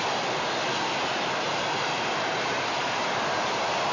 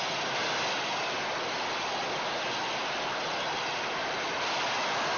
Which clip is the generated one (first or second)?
first